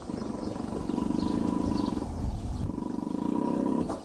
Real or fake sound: real